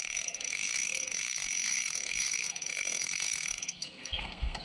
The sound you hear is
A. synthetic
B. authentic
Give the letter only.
A